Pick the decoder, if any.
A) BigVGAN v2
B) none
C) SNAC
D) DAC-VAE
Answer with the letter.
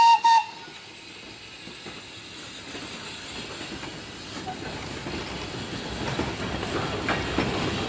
B